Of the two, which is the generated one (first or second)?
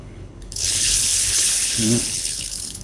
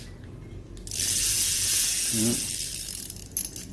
first